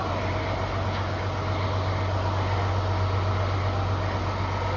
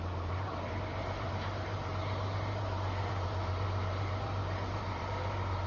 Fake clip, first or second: second